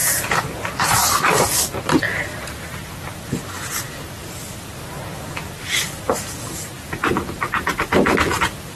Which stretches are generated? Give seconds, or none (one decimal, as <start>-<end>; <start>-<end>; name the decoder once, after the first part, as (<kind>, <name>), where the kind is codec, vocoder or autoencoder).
0.0-0.6 (vocoder, Vocos)